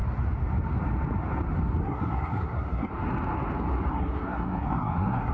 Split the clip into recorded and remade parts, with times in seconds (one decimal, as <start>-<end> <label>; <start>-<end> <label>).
0.0-1.8 recorded; 1.8-2.9 remade; 2.9-3.9 recorded; 3.9-5.3 remade